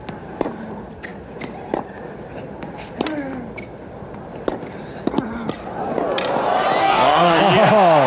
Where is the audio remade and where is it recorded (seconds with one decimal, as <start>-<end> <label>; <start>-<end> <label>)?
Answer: 0.0-6.8 recorded; 6.8-7.4 remade; 7.4-8.1 recorded